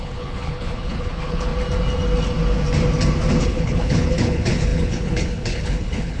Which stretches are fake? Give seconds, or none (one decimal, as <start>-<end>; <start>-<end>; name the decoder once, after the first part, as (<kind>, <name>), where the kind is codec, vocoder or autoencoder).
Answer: 0.0-1.5 (codec, HILCodec); 3.4-6.2